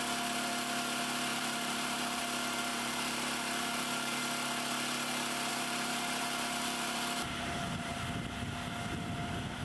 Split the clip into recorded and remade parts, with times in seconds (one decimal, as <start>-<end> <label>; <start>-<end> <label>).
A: 0.0-1.3 recorded; 1.3-2.2 remade; 2.2-2.7 recorded; 2.7-4.2 remade; 4.2-5.5 recorded; 5.5-8.0 remade; 8.0-9.6 recorded